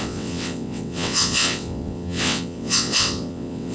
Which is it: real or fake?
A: fake